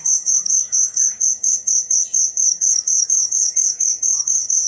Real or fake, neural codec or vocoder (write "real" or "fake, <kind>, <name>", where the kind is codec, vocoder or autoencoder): fake, codec, DAC